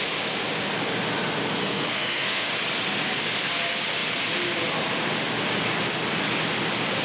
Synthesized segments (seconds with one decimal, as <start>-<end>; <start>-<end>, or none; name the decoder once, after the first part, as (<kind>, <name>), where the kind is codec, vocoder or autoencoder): 1.6-2.5 (codec, SNAC)